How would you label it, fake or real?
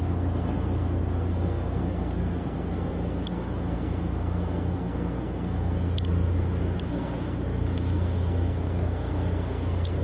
fake